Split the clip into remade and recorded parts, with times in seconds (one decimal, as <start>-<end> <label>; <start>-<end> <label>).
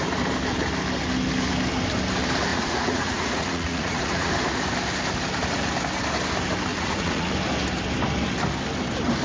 0.0-2.5 recorded; 2.5-4.3 remade; 4.3-6.7 recorded; 6.7-7.3 remade; 7.3-9.2 recorded